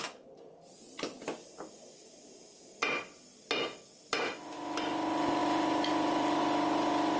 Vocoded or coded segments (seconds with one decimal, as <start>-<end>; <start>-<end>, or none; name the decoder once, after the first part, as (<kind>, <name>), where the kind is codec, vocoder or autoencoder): 5.4-6.4 (vocoder, BigVGAN v2)